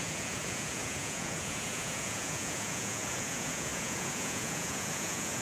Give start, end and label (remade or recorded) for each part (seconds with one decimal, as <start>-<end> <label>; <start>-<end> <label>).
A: 0.0-5.4 remade